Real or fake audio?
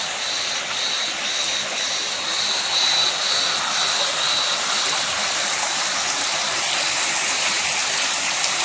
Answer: real